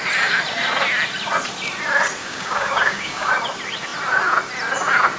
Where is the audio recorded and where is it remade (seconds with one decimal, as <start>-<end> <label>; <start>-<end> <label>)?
0.0-2.2 recorded; 2.2-3.3 remade; 3.3-5.2 recorded